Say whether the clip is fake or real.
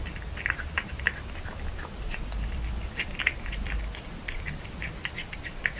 fake